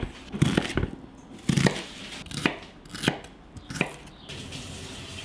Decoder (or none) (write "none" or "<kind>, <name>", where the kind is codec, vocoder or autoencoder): none